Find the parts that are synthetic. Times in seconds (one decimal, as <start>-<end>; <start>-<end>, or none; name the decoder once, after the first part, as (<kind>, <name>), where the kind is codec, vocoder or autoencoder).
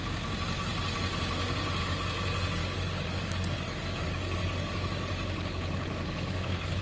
2.6-6.8 (codec, DAC)